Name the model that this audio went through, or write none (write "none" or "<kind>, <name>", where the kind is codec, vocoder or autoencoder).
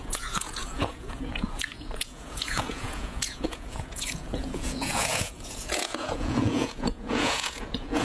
vocoder, Vocos